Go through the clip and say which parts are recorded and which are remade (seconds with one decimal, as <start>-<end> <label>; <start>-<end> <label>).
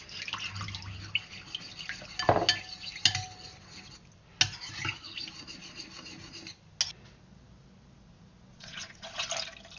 0.0-8.5 recorded; 8.5-9.3 remade; 9.3-9.8 recorded